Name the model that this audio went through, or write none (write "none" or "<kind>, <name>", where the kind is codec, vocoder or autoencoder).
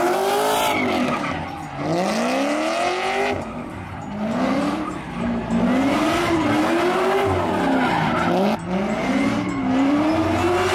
none